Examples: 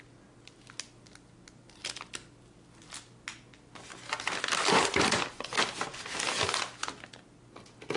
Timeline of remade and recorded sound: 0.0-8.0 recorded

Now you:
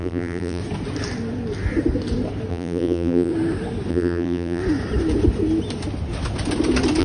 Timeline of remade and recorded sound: 0.0-0.6 remade; 0.6-2.5 recorded; 2.5-3.3 remade; 3.3-3.9 recorded; 3.9-4.6 remade; 4.6-7.0 recorded